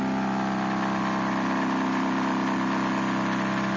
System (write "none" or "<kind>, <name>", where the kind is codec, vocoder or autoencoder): none